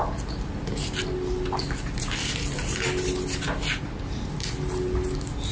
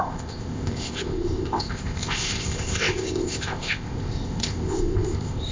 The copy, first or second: second